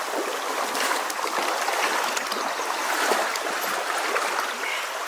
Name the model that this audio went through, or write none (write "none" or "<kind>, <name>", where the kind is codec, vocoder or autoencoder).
none